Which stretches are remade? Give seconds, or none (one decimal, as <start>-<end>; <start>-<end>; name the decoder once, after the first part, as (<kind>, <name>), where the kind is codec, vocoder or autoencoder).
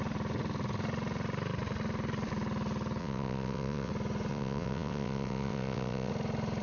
3.0-3.9 (vocoder, WaveNeXt); 4.3-6.1